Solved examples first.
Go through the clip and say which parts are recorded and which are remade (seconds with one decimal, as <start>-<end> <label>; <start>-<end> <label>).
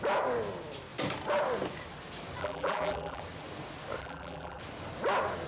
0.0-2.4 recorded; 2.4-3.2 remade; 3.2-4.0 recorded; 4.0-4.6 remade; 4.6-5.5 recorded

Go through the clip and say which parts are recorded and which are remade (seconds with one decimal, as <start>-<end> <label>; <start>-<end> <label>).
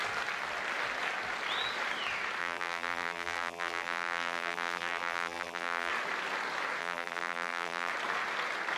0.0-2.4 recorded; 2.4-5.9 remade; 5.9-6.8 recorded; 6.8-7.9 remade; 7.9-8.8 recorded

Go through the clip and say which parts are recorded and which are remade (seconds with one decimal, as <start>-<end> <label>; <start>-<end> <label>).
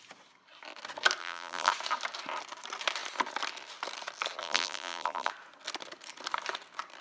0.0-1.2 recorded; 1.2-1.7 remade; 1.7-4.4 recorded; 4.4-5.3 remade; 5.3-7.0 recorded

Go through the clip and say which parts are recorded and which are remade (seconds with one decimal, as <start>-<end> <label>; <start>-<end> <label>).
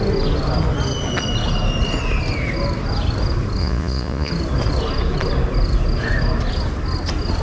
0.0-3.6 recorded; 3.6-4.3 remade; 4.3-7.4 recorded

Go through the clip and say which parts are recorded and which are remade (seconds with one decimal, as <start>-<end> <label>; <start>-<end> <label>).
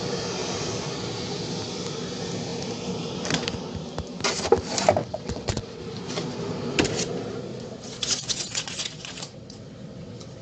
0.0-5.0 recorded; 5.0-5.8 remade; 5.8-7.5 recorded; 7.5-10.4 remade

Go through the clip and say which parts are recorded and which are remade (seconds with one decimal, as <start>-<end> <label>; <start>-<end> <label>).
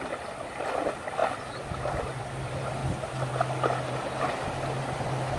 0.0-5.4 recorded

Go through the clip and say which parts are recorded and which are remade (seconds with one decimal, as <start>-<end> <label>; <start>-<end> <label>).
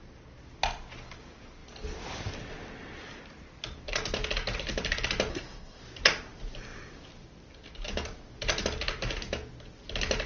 0.0-5.3 recorded; 5.3-5.8 remade; 5.8-10.3 recorded